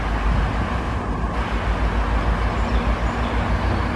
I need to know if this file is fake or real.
real